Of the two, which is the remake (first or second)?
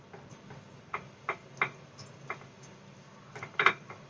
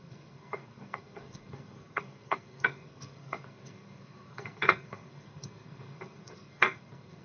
second